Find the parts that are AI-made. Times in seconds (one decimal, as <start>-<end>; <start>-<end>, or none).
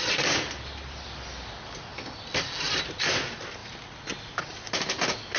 none